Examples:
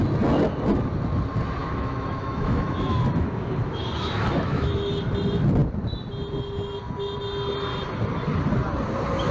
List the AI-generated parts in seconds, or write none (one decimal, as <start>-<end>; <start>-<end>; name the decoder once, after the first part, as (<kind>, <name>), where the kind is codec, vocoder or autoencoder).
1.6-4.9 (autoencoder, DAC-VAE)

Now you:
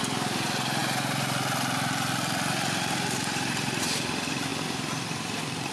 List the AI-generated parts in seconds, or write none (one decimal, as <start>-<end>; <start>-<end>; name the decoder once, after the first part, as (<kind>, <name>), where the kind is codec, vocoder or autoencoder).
none

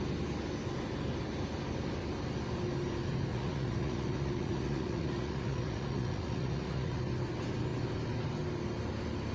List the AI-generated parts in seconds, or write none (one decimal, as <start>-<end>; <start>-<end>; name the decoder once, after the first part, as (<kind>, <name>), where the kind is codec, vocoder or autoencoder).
3.3-7.0 (vocoder, Vocos)

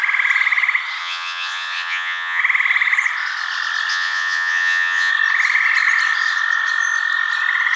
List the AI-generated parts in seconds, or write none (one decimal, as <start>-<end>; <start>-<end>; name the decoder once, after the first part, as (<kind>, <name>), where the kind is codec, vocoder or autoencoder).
1.0-2.4 (vocoder, Vocos); 3.9-5.1

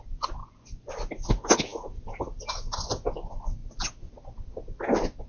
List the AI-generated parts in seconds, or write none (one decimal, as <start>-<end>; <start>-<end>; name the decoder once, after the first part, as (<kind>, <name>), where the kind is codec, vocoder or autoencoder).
0.4-0.9 (vocoder, Vocos)